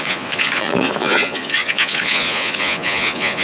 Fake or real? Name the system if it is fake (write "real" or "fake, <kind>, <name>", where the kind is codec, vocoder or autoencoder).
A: fake, vocoder, Vocos